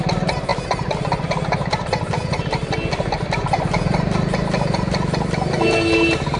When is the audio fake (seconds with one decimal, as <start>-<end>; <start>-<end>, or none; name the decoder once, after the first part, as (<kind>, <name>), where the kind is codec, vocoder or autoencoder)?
none